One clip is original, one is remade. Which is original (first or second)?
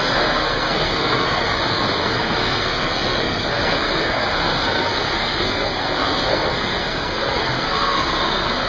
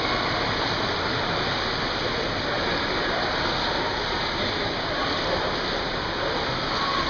second